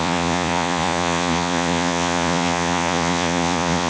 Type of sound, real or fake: fake